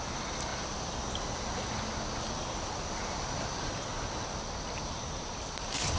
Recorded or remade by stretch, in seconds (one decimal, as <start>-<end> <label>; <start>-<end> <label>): 0.0-6.0 recorded